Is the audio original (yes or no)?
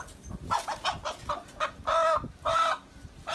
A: yes